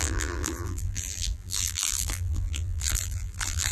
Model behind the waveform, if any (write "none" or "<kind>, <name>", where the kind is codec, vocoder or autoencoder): vocoder, BigVGAN v2